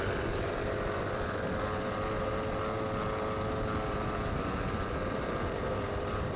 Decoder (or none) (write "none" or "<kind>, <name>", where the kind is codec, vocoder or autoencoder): none